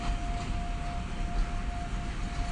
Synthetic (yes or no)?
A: no